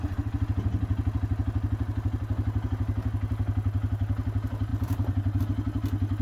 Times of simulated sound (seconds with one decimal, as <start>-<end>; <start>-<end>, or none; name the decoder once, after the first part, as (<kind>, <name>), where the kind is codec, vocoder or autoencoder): 4.7-5.4 (vocoder, BigVGAN v2)